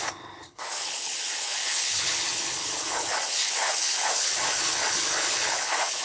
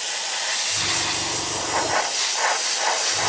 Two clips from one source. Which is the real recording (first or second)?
second